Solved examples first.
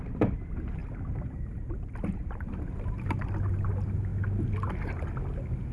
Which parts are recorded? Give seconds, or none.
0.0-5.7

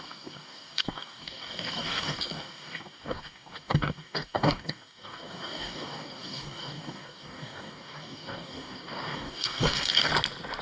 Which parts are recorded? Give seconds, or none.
10.1-10.6

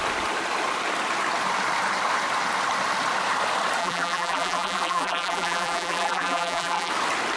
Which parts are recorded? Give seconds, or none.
0.0-3.8; 6.9-7.4

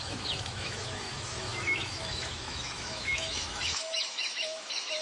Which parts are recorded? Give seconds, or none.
none

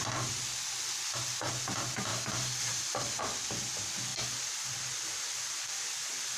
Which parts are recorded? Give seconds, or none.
0.0-2.1; 3.2-6.4

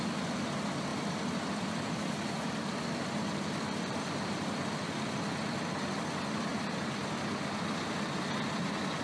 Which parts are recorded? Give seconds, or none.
0.0-0.9; 4.9-6.5; 7.0-9.0